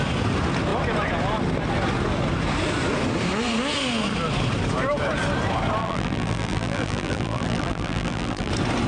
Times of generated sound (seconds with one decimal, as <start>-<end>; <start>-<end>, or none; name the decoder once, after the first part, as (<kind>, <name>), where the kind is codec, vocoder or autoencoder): 5.8-8.5 (vocoder, BigVGAN v2)